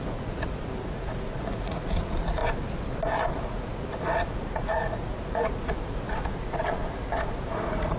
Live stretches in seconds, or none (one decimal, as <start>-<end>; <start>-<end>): 2.4-3.3